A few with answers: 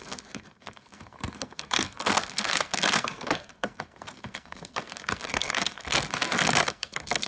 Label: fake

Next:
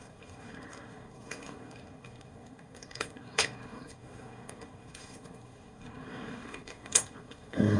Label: fake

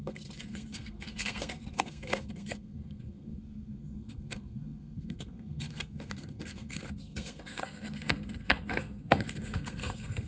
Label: fake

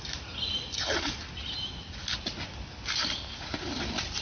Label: real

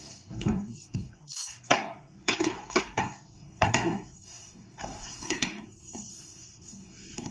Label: fake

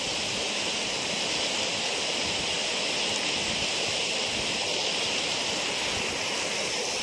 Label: real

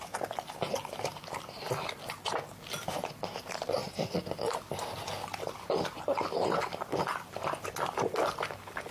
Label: real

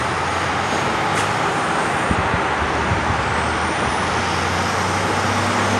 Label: real